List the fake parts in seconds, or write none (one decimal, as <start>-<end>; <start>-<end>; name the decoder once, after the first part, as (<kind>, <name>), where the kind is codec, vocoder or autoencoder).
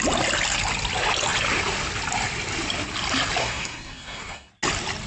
3.4-4.5 (codec, SNAC)